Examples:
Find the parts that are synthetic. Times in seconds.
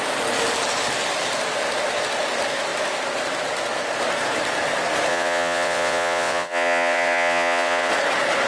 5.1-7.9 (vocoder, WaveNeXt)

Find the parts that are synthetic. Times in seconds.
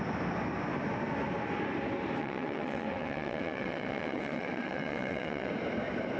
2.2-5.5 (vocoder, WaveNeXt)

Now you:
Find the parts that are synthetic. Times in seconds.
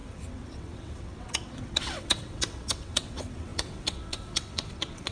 0.0-5.1 (vocoder, WaveNeXt)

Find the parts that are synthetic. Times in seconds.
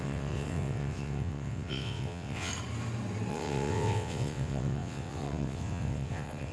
0.0-2.5 (vocoder, WaveNeXt); 3.3-6.5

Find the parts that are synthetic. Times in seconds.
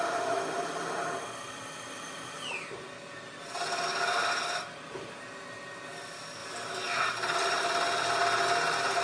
none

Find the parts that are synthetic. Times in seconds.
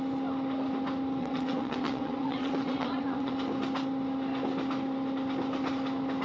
1.2-3.3 (vocoder, WaveNeXt)